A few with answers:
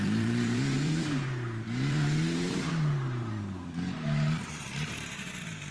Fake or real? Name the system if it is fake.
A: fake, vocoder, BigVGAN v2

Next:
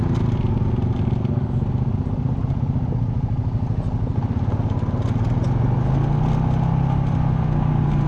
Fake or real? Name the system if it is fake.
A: real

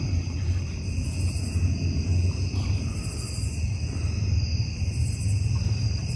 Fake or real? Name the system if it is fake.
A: real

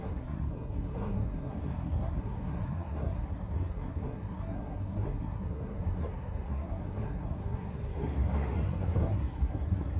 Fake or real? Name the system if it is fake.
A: fake, codec, SNAC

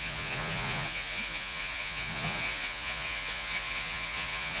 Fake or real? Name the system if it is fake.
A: fake, vocoder, Vocos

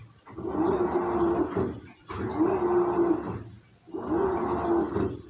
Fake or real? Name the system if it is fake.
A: real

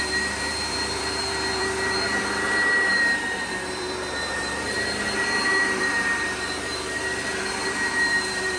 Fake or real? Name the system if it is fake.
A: fake, vocoder, BigVGAN v2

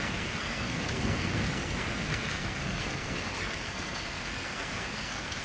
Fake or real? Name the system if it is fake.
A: fake, codec, SNAC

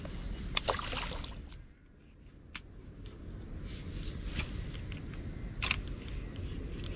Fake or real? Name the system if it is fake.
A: real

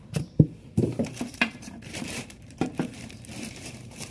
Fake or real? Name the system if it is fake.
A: fake, vocoder, BigVGAN v2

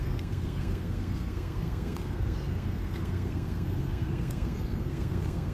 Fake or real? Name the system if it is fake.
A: fake, codec, SNAC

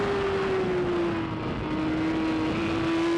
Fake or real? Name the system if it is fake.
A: real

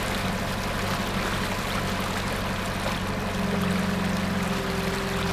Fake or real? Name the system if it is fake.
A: real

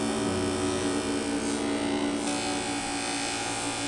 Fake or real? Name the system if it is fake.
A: real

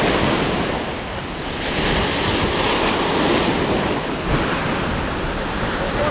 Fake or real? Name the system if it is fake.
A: real